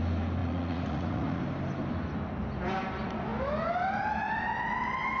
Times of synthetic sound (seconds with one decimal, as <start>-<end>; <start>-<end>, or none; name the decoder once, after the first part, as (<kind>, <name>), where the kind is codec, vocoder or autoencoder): 0.4-1.4 (vocoder, Vocos)

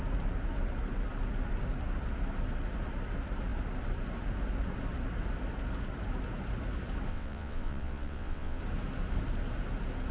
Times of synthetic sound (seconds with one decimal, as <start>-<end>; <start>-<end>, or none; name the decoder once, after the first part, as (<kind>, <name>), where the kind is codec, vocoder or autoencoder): 7.1-8.6 (vocoder, WaveNeXt)

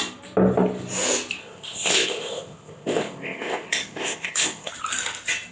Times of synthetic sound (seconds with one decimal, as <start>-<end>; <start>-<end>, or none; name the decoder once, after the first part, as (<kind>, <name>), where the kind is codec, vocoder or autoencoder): 1.4-4.7 (codec, ZipCodec)

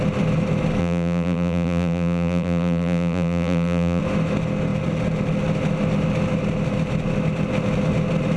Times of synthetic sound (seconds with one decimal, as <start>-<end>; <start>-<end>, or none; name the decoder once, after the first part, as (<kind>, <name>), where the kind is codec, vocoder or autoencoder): 0.8-4.0 (vocoder, BigVGAN v2)

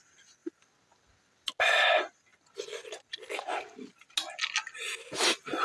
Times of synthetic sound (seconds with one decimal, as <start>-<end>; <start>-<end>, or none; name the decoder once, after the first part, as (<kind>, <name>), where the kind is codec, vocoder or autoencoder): none

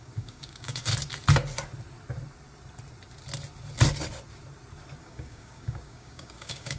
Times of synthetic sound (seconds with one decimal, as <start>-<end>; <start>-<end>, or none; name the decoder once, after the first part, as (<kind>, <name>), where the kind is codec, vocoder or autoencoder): 0.0-0.9 (codec, DAC); 5.0-6.8